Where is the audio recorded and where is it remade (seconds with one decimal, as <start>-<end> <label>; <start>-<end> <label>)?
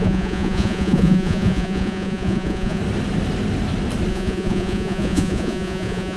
0.0-2.8 remade; 2.8-4.1 recorded; 4.1-6.2 remade